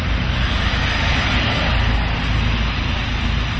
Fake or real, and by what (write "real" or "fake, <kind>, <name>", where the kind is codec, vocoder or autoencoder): real